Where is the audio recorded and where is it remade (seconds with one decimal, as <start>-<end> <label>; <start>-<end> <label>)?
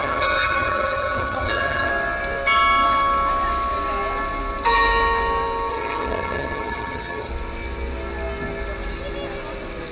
0.0-1.9 remade; 1.9-5.7 recorded; 5.7-7.3 remade; 7.3-9.9 recorded